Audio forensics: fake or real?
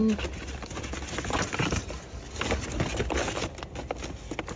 real